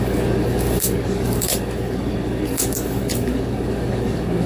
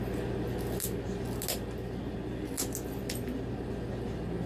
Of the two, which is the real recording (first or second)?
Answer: second